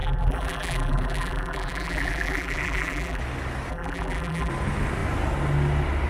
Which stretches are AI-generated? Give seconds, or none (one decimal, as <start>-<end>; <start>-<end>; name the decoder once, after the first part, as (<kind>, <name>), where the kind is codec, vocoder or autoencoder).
0.0-3.2 (vocoder, BigVGAN v2); 3.7-4.5